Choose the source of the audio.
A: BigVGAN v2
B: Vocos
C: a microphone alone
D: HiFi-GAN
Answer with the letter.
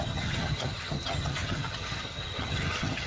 D